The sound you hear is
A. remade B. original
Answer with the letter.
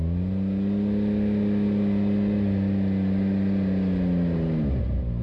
B